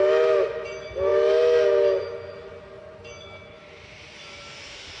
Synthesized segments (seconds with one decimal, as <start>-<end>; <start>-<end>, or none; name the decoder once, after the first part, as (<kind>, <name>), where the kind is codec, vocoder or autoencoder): none